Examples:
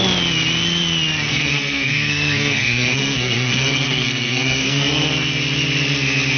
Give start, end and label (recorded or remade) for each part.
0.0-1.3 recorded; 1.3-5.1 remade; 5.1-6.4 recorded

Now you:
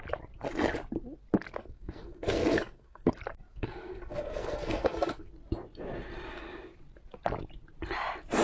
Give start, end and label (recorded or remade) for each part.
0.0-1.6 recorded; 1.6-3.1 remade; 3.1-3.5 recorded; 3.5-5.3 remade; 5.3-8.4 recorded

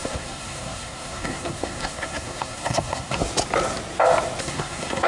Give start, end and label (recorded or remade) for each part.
0.0-3.2 remade; 3.2-4.4 recorded; 4.4-5.1 remade

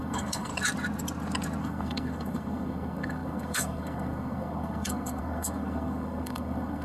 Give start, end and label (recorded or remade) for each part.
0.0-0.5 remade; 0.5-1.6 recorded; 1.6-6.8 remade

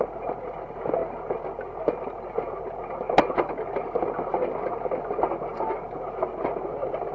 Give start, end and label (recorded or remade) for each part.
0.0-7.1 recorded

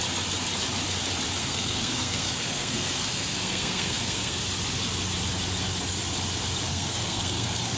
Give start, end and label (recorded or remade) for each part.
0.0-1.4 recorded; 1.4-4.4 remade; 4.4-6.7 recorded; 6.7-7.8 remade

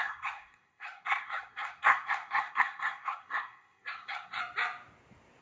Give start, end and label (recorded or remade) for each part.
0.0-4.4 remade; 4.4-5.4 recorded